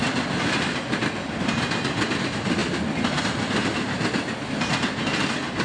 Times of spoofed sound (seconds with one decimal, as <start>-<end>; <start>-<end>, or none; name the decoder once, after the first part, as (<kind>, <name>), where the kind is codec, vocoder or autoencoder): none